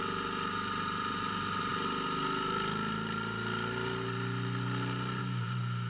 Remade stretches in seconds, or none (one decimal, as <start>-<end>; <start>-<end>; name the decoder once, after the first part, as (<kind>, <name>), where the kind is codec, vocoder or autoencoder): none